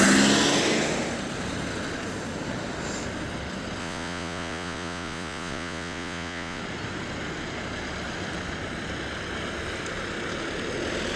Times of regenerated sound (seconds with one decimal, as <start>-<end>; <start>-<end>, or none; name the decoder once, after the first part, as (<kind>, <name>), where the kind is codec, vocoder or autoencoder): 3.8-6.6 (vocoder, Vocos)